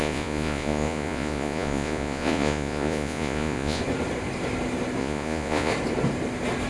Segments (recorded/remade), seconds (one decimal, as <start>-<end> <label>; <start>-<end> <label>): 0.0-3.8 remade; 3.8-5.0 recorded; 5.0-5.7 remade; 5.7-6.7 recorded